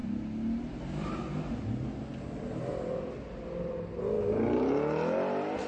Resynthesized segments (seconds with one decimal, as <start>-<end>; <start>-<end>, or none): none